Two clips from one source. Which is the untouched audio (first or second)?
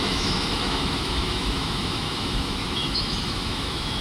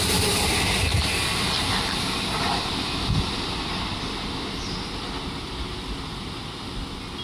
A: second